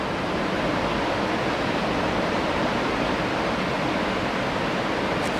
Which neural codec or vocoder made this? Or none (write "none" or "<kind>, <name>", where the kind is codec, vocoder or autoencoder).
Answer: none